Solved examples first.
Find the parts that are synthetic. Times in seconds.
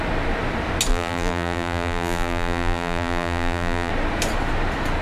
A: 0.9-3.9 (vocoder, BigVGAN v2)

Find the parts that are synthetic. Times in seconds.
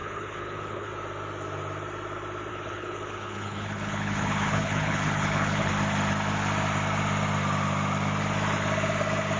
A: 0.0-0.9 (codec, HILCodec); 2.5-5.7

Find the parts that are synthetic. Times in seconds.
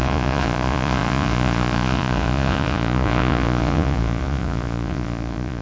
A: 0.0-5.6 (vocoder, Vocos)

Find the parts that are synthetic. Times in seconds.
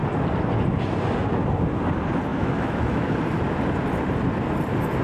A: 2.3-3.1 (autoencoder, DAC-VAE)